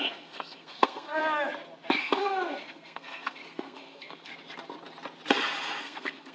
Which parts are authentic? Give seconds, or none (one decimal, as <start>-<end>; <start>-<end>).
1.2-2.0; 4.3-5.8